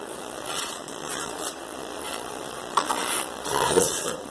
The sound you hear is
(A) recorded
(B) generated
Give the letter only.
B